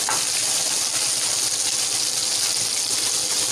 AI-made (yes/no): no